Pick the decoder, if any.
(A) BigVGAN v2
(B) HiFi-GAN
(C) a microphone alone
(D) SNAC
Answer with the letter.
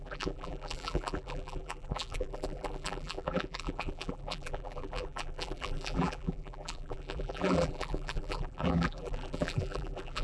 A